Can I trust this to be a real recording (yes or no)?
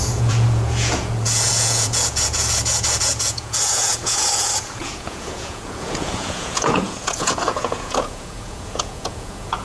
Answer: no